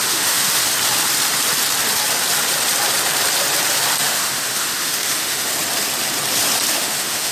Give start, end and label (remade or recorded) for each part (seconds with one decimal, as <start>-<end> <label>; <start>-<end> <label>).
0.0-0.6 remade; 0.6-4.0 recorded; 4.0-5.5 remade; 5.5-6.7 recorded; 6.7-7.3 remade

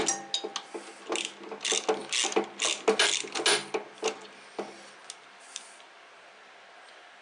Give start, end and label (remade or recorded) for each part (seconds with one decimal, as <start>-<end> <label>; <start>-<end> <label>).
0.0-7.2 recorded

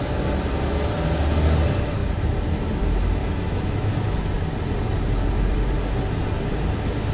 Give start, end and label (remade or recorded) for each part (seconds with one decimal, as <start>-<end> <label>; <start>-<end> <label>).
0.0-3.2 recorded; 3.2-4.3 remade; 4.3-7.1 recorded

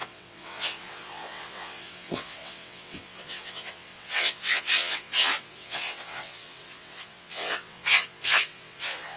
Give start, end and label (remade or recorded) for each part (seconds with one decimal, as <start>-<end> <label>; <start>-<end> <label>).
0.0-9.2 remade

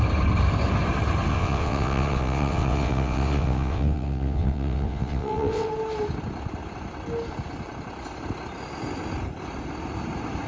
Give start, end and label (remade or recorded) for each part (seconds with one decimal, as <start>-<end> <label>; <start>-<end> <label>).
0.0-1.3 recorded; 1.3-5.7 remade; 5.7-10.5 recorded

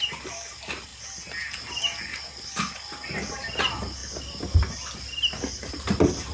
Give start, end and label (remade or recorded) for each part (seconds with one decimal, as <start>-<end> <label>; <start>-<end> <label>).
0.0-6.3 recorded

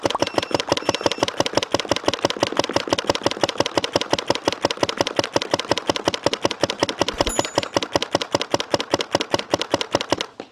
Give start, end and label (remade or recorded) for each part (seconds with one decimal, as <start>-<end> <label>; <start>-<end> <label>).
0.0-10.5 recorded

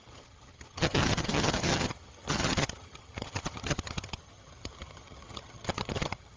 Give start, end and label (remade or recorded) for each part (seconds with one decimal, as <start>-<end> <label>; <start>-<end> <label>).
0.0-6.4 remade